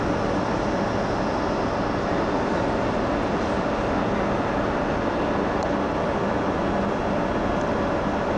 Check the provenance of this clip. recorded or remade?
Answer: recorded